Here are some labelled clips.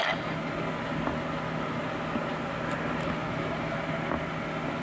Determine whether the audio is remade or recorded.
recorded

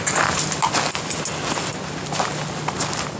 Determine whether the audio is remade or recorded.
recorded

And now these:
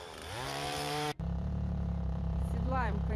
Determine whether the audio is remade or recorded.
remade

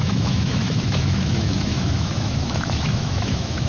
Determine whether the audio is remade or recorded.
remade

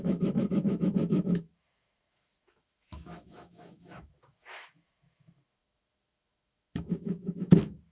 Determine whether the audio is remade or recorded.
remade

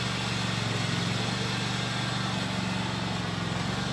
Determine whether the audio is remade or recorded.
recorded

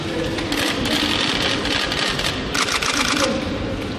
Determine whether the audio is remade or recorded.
recorded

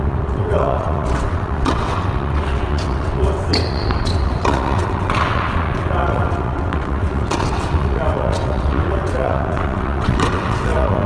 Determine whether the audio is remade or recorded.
remade